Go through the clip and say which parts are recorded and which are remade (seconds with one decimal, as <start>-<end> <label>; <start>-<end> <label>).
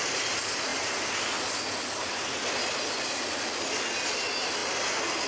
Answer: 0.0-5.3 recorded